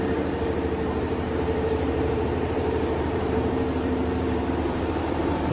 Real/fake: fake